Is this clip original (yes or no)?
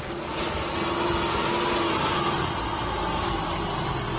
yes